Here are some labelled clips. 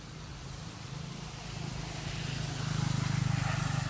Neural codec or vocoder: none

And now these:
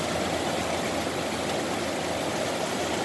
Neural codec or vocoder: none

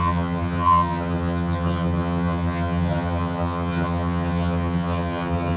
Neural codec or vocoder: vocoder, HiFi-GAN